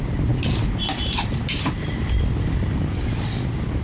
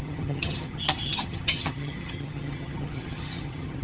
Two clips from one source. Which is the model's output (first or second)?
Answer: second